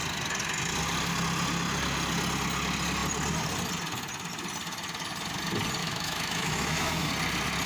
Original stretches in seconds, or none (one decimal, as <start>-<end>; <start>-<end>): 0.0-5.8; 7.1-7.7